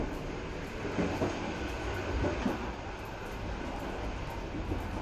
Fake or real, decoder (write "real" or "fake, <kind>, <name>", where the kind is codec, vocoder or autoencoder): real